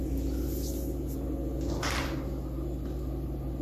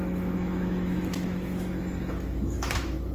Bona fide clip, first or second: first